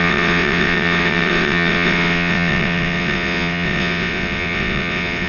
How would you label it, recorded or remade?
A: remade